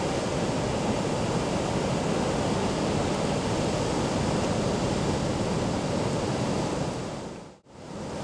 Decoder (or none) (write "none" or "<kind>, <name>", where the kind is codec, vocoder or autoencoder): none